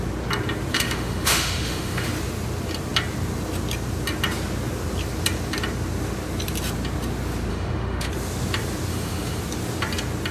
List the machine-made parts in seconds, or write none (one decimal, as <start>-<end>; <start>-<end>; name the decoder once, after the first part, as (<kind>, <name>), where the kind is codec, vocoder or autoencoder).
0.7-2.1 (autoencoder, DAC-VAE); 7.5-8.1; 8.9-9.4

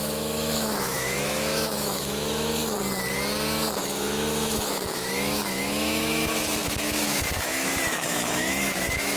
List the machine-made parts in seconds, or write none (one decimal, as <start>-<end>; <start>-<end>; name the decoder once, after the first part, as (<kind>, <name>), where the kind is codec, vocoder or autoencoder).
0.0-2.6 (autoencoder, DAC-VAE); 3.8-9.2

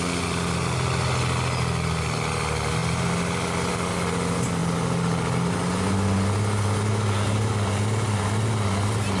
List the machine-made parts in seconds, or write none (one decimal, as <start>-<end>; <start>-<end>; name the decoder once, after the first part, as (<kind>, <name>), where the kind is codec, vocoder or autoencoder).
none

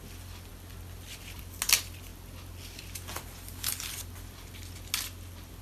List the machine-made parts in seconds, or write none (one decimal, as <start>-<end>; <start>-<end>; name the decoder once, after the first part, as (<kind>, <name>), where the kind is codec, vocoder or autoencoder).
none

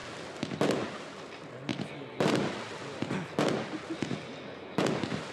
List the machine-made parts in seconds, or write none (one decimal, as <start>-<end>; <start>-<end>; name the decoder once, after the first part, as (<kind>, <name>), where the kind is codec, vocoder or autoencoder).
none